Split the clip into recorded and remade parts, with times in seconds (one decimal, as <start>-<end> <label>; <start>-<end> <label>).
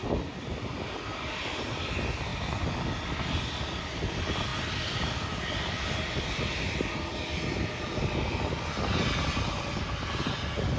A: 0.0-10.8 recorded